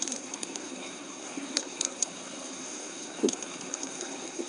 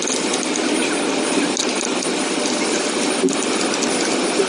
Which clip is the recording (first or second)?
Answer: second